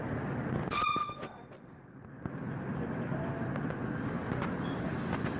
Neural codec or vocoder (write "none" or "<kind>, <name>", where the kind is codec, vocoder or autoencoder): none